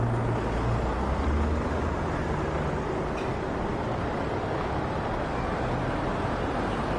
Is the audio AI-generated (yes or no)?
no